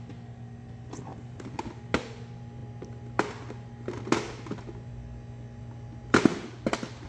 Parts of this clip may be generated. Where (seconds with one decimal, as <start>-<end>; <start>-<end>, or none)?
1.1-1.8